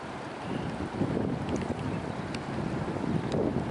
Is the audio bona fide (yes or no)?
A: yes